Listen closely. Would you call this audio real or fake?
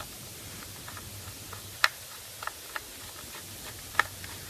real